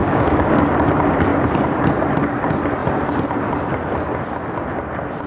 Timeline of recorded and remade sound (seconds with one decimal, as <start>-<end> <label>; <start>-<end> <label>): 0.0-0.6 remade; 0.6-5.3 recorded